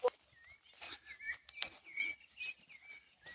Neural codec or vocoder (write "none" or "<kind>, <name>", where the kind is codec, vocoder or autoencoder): none